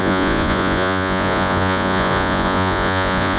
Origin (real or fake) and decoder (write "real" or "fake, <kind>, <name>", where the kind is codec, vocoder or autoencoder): fake, vocoder, Vocos